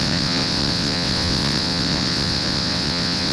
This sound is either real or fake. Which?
fake